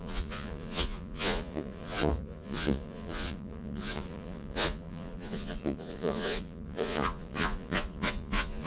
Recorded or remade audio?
remade